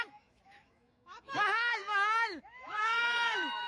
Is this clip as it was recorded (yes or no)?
no